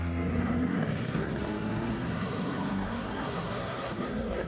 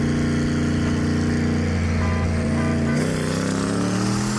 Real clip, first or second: second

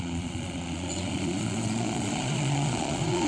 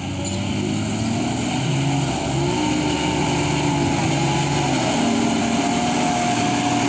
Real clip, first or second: second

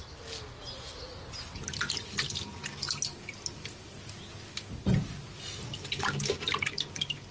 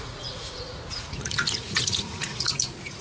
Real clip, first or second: first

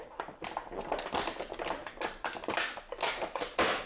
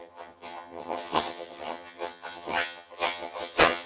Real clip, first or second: first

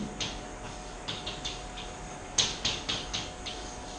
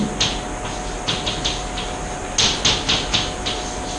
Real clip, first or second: second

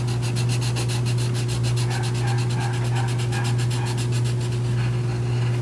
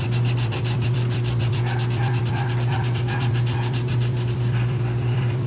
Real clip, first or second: first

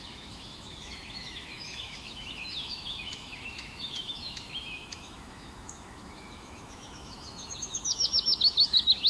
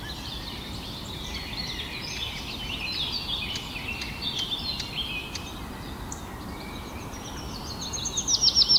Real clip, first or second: second